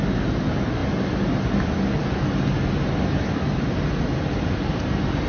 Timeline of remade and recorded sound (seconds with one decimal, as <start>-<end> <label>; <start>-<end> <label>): 0.0-5.3 recorded